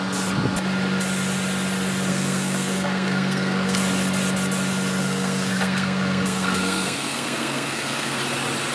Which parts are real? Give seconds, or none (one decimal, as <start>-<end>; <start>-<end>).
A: 0.0-2.1; 3.8-5.0; 8.2-8.7